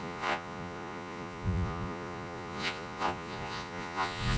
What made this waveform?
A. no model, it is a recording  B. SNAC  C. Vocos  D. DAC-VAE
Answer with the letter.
C